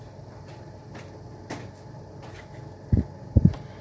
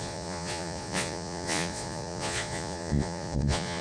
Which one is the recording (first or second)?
first